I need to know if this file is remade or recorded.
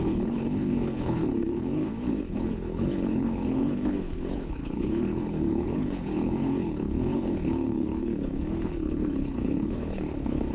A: remade